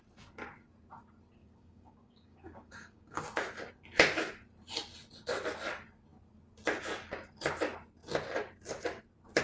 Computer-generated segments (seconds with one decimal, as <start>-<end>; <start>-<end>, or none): 1.4-3.2